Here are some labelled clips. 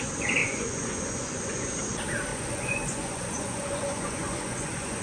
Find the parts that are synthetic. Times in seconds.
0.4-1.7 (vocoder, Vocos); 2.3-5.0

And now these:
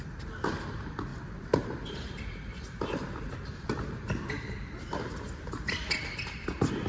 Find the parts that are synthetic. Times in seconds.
none